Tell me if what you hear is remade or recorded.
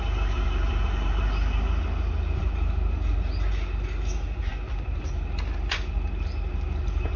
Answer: recorded